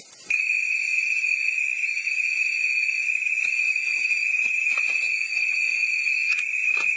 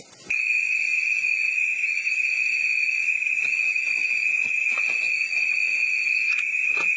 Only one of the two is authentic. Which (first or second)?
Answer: second